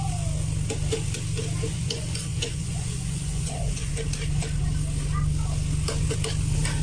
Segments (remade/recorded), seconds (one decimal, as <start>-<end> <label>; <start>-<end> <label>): 0.0-1.7 recorded; 1.7-3.9 remade; 3.9-6.8 recorded